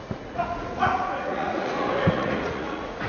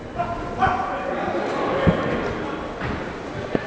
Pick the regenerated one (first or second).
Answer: first